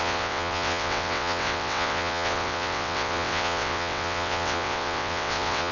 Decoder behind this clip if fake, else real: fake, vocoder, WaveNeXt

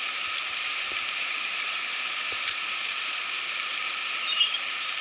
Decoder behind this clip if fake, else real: fake, vocoder, BigVGAN v2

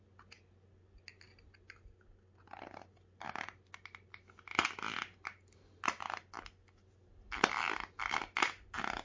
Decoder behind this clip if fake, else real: real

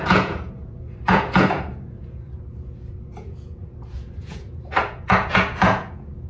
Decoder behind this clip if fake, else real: fake, vocoder, Vocos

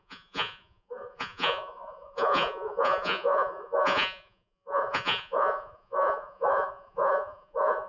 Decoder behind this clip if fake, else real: fake, vocoder, Vocos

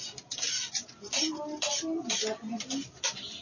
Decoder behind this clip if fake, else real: real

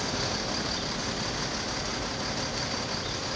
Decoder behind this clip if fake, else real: fake, vocoder, BigVGAN v2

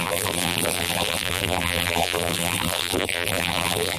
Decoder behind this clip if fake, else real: fake, vocoder, BigVGAN v2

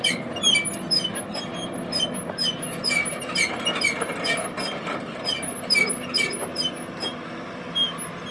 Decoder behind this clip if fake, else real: real